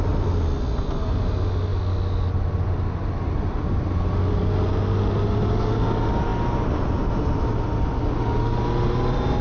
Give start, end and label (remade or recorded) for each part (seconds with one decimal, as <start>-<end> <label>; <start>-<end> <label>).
0.0-9.4 recorded